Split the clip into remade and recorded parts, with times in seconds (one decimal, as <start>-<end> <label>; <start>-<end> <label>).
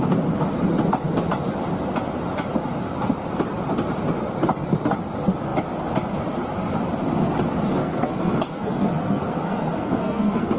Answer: 0.0-7.8 recorded; 7.8-10.6 remade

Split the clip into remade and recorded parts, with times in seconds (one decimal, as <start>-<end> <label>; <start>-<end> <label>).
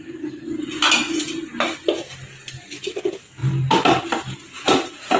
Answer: 0.0-5.2 recorded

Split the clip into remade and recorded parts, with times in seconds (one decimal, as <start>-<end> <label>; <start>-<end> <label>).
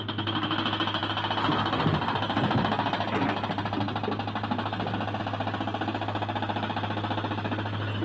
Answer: 0.0-8.0 recorded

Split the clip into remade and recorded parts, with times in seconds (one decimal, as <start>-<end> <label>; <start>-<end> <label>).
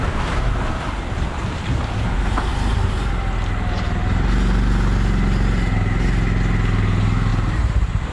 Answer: 0.0-2.5 recorded; 2.5-3.1 remade; 3.1-7.3 recorded; 7.3-8.1 remade